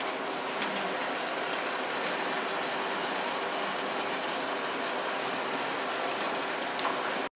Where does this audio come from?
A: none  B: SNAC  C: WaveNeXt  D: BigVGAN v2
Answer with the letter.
A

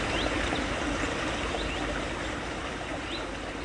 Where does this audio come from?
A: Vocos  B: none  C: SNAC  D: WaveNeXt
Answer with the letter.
B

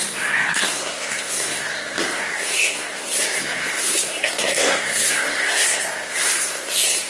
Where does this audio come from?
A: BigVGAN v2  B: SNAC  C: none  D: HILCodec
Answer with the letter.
B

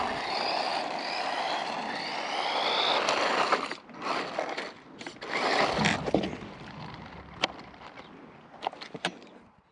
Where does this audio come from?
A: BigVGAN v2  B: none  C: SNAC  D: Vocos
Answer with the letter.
B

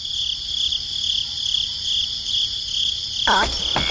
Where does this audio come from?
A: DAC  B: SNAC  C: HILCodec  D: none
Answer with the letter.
D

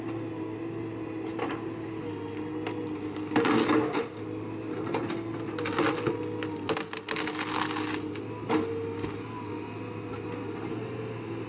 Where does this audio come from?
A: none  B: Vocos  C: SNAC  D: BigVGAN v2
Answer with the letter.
A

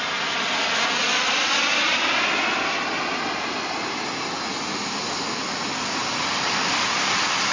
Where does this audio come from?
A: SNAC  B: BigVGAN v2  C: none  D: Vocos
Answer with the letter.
C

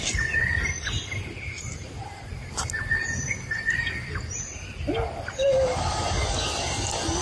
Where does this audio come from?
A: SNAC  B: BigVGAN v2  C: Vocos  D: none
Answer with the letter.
D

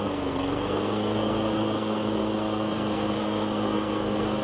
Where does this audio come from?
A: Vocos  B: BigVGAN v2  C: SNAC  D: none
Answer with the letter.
C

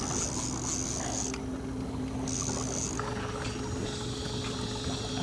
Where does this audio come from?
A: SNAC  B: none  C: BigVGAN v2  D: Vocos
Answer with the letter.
B